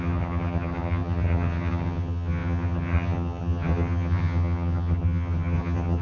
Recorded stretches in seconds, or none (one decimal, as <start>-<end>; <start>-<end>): none

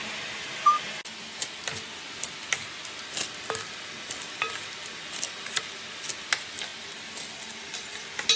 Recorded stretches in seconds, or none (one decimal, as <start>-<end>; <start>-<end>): 0.0-8.4

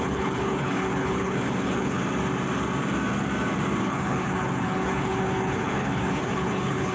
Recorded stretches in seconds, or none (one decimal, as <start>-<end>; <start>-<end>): 2.0-3.8